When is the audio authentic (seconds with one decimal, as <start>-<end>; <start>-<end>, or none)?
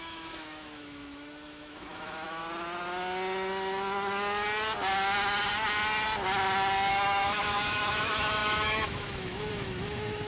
2.4-6.9